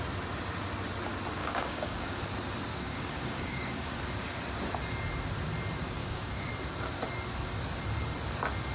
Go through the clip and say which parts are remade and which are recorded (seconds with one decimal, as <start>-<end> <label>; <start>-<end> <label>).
0.0-1.4 recorded; 1.4-2.2 remade; 2.2-2.7 recorded; 2.7-4.0 remade; 4.0-6.0 recorded; 6.0-6.5 remade; 6.5-8.7 recorded